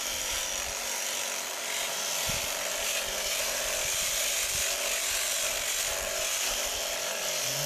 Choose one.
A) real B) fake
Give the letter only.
A